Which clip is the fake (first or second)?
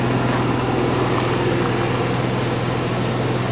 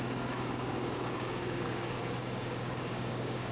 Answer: second